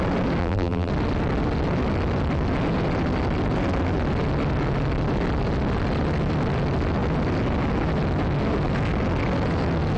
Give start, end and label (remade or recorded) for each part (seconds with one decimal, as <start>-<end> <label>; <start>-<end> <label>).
0.0-0.4 recorded; 0.4-0.9 remade; 0.9-10.0 recorded